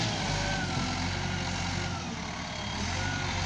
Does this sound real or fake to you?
real